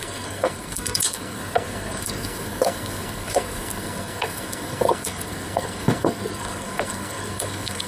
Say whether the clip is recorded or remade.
remade